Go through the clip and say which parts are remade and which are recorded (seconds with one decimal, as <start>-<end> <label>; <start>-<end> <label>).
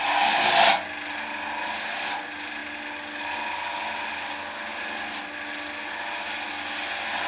0.0-7.3 recorded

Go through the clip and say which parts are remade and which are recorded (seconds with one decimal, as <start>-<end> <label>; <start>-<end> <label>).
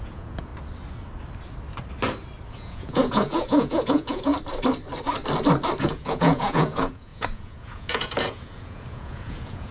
0.0-0.5 remade; 0.5-2.5 recorded; 2.5-4.3 remade; 4.3-5.8 recorded; 5.8-9.7 remade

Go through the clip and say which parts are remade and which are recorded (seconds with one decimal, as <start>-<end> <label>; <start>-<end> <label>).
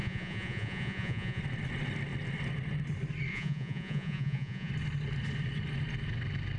0.0-1.4 remade; 1.4-3.3 recorded; 3.3-4.7 remade; 4.7-6.6 recorded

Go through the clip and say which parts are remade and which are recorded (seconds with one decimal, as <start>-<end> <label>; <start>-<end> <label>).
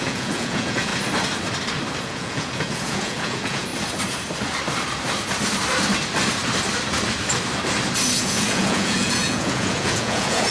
0.0-0.9 remade; 0.9-2.0 recorded; 2.0-3.7 remade; 3.7-8.2 recorded; 8.2-10.5 remade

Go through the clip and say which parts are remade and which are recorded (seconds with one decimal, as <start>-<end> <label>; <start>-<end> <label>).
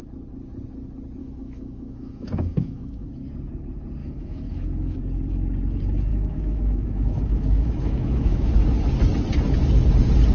0.0-1.2 recorded; 1.2-3.1 remade; 3.1-4.0 recorded; 4.0-5.0 remade; 5.0-6.1 recorded; 6.1-8.5 remade; 8.5-10.3 recorded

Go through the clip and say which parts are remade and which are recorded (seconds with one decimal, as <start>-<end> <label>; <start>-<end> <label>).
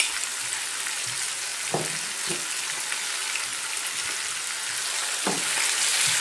0.0-6.2 recorded